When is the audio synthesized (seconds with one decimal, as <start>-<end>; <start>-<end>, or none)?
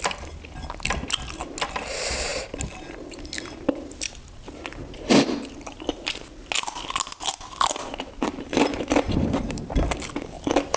8.3-10.0